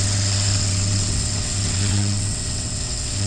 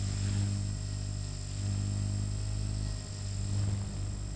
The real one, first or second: second